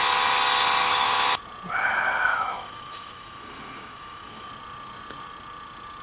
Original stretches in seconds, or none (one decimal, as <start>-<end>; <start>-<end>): 0.0-0.8; 1.4-2.3; 4.5-6.0